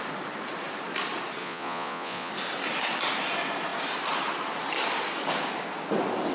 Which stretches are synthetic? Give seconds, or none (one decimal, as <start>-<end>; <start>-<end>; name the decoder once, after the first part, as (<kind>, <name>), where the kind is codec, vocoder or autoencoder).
1.4-2.3 (vocoder, Vocos)